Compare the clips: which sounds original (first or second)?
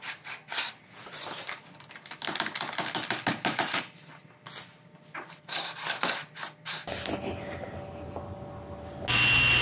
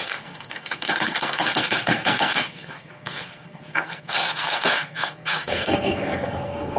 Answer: first